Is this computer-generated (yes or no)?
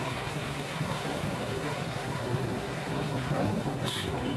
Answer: yes